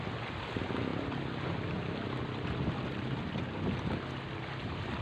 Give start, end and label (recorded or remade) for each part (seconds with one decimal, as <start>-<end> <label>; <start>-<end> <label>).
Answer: 0.0-5.0 recorded